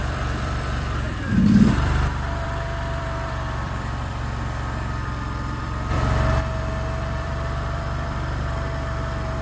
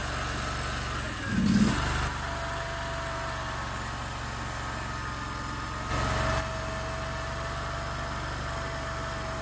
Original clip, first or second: second